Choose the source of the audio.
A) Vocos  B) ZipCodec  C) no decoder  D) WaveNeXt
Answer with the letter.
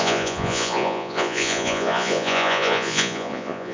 A